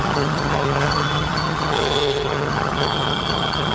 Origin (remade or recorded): remade